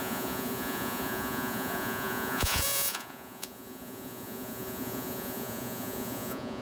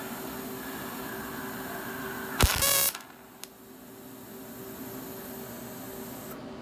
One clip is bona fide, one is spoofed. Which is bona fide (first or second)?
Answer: second